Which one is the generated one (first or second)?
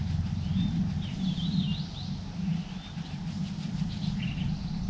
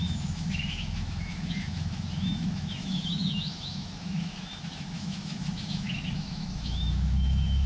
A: second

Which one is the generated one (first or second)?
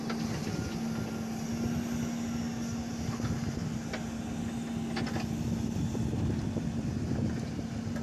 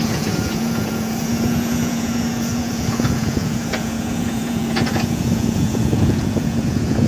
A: second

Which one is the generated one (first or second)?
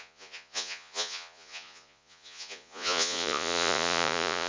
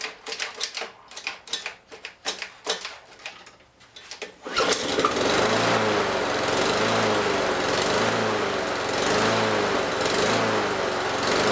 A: first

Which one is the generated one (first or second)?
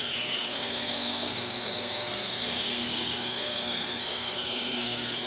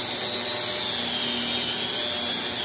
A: first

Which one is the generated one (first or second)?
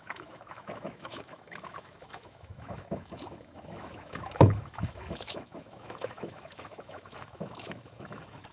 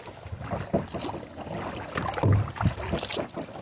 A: first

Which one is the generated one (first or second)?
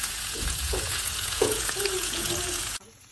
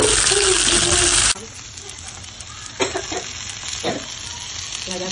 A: first